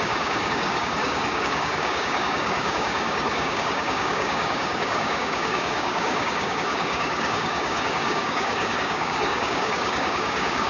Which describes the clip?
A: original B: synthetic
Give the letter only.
B